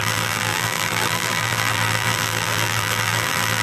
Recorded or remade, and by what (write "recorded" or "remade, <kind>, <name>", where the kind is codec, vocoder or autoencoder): remade, vocoder, BigVGAN v2